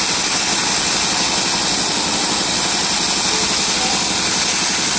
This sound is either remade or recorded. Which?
recorded